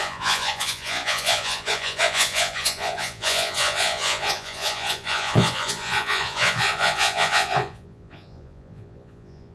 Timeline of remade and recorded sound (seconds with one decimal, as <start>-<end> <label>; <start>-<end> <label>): 0.0-9.5 remade